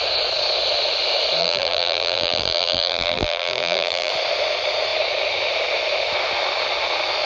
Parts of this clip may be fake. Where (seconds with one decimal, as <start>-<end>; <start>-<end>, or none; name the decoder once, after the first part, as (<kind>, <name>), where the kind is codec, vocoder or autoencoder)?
1.4-4.1 (vocoder, BigVGAN v2)